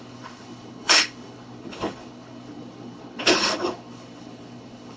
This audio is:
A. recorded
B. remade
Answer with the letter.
B